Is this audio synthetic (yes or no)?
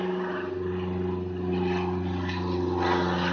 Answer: no